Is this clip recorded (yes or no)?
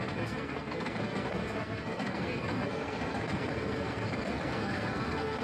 no